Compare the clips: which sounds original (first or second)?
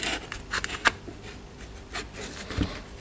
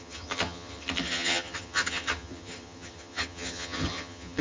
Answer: first